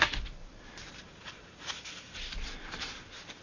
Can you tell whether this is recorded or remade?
recorded